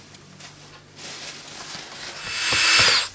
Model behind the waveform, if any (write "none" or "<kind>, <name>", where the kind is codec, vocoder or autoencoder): none